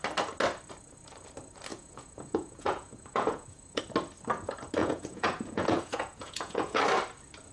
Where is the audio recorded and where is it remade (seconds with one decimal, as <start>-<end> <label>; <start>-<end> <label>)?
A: 0.0-1.7 recorded; 1.7-3.8 remade; 3.8-4.8 recorded; 4.8-6.8 remade; 6.8-7.5 recorded